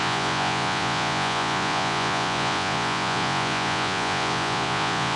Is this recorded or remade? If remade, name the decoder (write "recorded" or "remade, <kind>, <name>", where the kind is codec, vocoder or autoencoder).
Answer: remade, vocoder, Vocos